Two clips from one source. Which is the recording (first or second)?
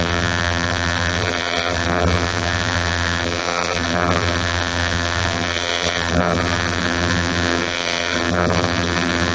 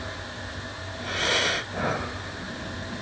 second